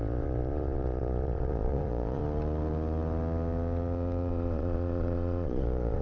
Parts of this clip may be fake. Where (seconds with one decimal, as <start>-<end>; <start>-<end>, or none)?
0.0-2.2; 4.3-6.0